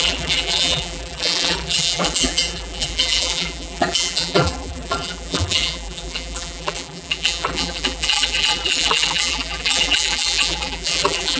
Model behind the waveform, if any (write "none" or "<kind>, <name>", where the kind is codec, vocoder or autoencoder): vocoder, BigVGAN v2